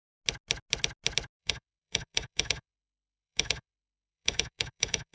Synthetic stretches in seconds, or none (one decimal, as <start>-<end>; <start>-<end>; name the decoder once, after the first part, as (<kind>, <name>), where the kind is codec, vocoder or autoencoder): 1.4-5.1 (autoencoder, DAC-VAE)